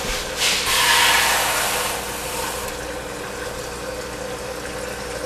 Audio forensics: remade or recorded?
recorded